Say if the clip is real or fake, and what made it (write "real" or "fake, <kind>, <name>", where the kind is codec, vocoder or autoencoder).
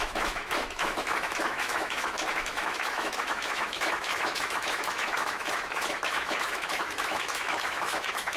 fake, autoencoder, DAC-VAE